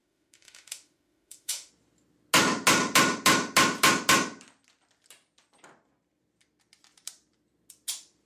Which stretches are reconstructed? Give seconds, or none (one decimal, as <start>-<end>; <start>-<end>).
0.0-1.7